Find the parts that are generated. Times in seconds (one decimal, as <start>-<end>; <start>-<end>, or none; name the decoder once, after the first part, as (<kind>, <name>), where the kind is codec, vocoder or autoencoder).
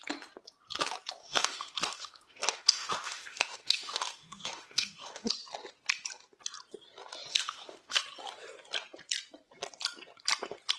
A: 1.2-5.3 (autoencoder, DAC-VAE); 7.3-8.0